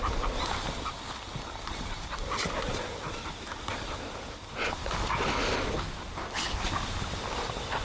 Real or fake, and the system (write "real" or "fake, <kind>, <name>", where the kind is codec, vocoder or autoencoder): real